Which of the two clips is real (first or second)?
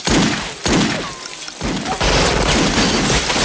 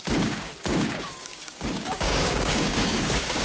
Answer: first